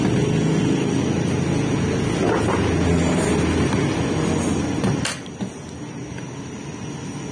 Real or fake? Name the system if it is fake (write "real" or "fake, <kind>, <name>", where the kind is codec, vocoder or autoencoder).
real